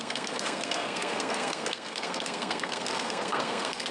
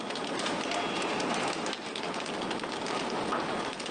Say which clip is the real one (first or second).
second